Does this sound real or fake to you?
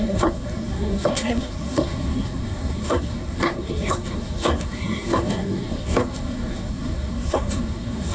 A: fake